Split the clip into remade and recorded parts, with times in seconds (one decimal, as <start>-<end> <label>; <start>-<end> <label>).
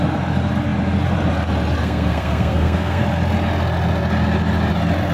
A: 0.0-1.8 recorded; 1.8-3.0 remade; 3.0-5.1 recorded